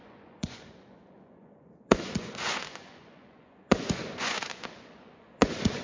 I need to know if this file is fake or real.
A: fake